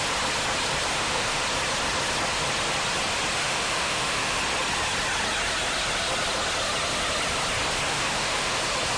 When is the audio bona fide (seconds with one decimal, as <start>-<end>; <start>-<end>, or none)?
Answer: 0.0-0.9; 1.4-3.4; 4.4-7.9; 8.6-9.0